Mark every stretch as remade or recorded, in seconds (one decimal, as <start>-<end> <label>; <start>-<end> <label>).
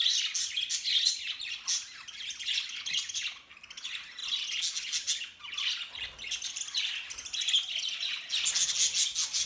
0.0-9.5 recorded